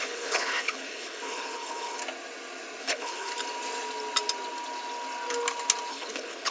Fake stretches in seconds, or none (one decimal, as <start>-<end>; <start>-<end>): 0.0-2.0; 2.8-3.3; 5.9-6.5